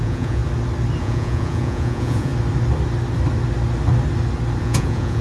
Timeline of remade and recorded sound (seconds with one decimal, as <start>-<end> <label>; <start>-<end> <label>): 0.0-0.4 remade; 0.4-1.0 recorded; 1.0-2.3 remade; 2.3-4.6 recorded; 4.6-5.2 remade